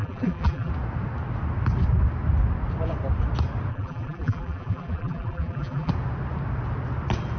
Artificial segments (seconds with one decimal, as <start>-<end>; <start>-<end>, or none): 0.0-0.7; 3.7-5.9